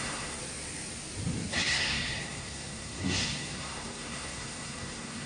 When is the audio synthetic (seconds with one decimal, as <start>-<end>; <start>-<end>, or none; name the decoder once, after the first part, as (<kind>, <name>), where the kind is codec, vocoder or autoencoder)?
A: 0.0-0.4 (codec, SNAC); 1.5-5.3